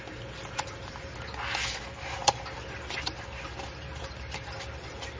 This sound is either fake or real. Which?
real